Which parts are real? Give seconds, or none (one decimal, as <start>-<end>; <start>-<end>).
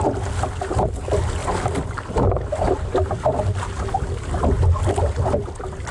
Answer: 0.0-5.9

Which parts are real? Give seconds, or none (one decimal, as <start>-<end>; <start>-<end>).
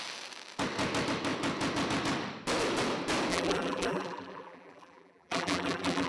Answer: 0.0-3.3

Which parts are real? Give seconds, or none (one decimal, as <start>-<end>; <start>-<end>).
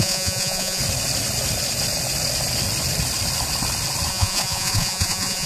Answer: 0.8-4.1